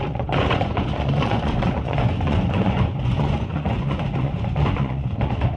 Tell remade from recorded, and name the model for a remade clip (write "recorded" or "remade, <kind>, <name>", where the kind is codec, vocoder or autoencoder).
remade, vocoder, Vocos